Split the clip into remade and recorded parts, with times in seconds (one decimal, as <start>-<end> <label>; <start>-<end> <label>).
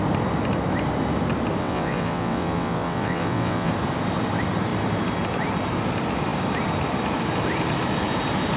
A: 0.0-1.6 recorded; 1.6-3.7 remade; 3.7-8.6 recorded